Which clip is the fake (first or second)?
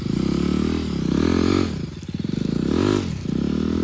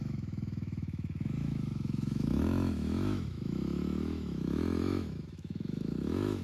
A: second